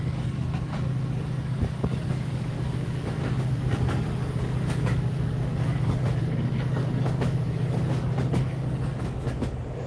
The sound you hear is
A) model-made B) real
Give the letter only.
A